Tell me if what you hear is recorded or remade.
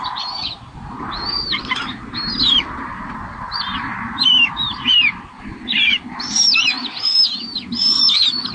remade